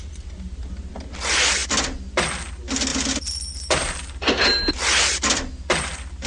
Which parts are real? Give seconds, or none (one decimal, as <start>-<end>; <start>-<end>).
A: 0.0-6.3